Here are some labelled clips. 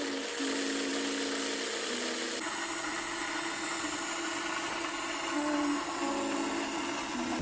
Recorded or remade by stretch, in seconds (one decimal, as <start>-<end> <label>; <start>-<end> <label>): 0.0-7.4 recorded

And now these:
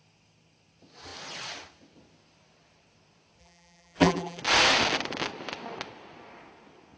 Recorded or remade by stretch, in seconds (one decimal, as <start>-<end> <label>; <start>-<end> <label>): 0.0-3.4 recorded; 3.4-4.4 remade; 4.4-7.0 recorded

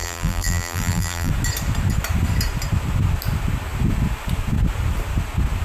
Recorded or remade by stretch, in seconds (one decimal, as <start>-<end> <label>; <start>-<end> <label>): 0.0-1.3 remade; 1.3-5.6 recorded

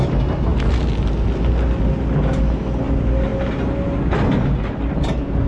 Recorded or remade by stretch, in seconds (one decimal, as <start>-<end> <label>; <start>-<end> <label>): 0.0-5.5 recorded

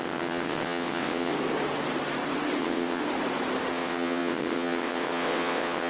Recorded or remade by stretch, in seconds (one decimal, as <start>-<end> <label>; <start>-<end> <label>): 0.0-1.3 remade; 1.3-2.6 recorded; 2.6-3.0 remade; 3.0-3.7 recorded; 3.7-5.9 remade

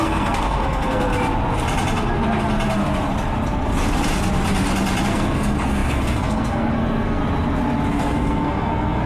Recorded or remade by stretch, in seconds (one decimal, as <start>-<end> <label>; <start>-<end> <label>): 0.0-1.1 remade; 1.1-5.0 recorded; 5.0-7.2 remade; 7.2-7.9 recorded; 7.9-9.1 remade

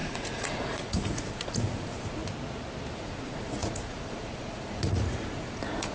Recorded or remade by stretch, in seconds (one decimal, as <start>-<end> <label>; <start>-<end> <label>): 0.0-2.2 remade; 2.2-2.9 recorded; 2.9-5.9 remade

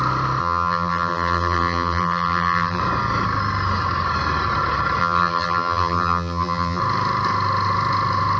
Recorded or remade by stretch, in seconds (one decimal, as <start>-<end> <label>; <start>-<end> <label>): 0.0-0.4 recorded; 0.4-2.8 remade; 2.8-5.0 recorded; 5.0-6.8 remade; 6.8-8.4 recorded